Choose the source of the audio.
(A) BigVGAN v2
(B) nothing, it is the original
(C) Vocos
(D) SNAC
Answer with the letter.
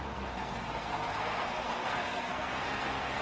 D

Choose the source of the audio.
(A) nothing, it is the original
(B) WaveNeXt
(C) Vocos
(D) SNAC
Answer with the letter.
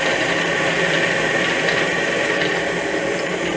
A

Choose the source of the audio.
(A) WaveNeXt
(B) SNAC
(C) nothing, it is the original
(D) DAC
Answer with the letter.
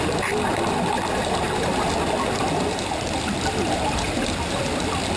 C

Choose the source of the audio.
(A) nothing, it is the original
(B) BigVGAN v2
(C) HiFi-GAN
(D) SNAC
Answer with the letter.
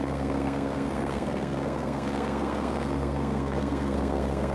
D